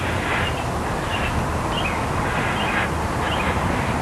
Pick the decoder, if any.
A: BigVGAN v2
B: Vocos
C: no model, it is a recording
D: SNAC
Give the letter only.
C